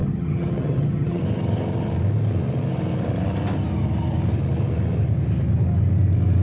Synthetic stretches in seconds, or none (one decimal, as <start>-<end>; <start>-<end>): 0.0-1.2